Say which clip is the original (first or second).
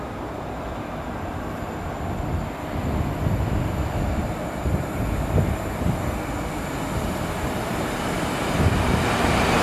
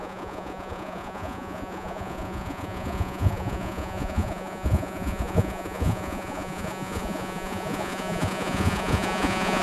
first